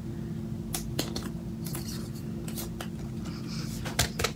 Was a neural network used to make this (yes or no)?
no